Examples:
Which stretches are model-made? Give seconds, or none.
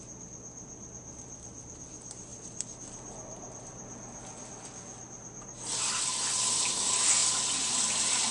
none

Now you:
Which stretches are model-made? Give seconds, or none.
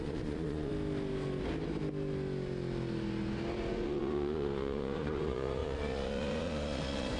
0.0-0.7 (vocoder, Vocos); 3.7-7.2